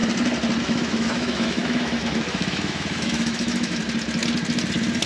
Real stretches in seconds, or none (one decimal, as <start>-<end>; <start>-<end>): 0.0-0.6; 3.8-5.1